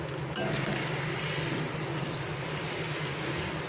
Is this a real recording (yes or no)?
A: yes